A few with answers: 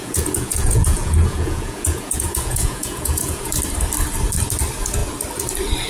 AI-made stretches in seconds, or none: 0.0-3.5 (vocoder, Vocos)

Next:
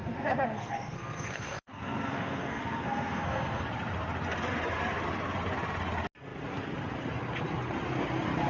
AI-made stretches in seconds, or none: 0.0-3.6 (codec, SNAC)

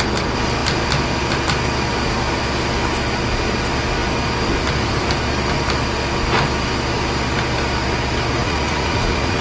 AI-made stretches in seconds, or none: 8.4-9.4 (vocoder, Vocos)

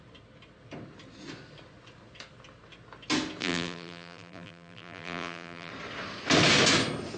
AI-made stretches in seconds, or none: 3.4-5.7 (vocoder, BigVGAN v2)

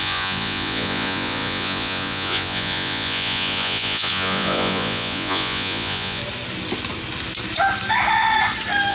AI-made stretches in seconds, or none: 0.0-6.2 (vocoder, Vocos)

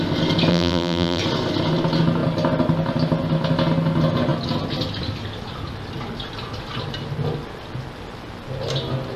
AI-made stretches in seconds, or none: 0.5-1.2 (vocoder, BigVGAN v2)

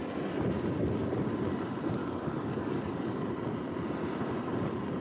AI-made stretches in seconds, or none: 2.0-3.3 (codec, DAC)

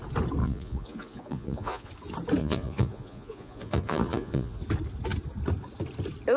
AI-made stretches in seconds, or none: 0.4-1.9 (vocoder, Vocos); 2.4-4.6